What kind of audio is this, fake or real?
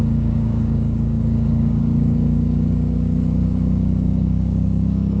fake